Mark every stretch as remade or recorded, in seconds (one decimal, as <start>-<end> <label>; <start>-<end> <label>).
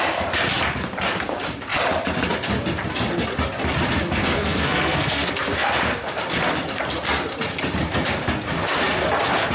0.0-4.2 recorded; 4.2-5.3 remade; 5.3-9.5 recorded